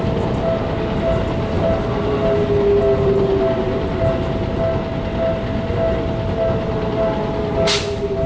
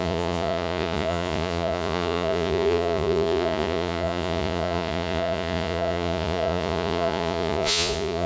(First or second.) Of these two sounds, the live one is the first